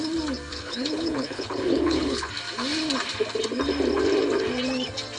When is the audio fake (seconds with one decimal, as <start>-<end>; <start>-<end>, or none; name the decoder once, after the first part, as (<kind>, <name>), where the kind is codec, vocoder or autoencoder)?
0.5-2.3 (codec, HILCodec)